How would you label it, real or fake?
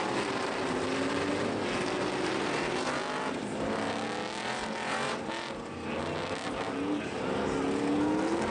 real